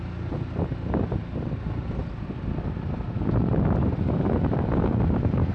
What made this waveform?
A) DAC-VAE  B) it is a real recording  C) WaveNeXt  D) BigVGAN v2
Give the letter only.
B